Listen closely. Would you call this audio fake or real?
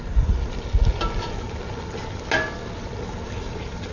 real